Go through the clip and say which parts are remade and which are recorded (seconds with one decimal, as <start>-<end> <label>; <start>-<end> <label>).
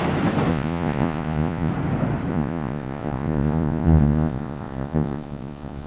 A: 0.0-0.5 recorded; 0.5-1.7 remade; 1.7-2.3 recorded; 2.3-5.9 remade